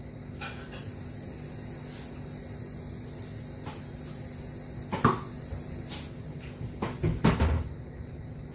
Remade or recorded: recorded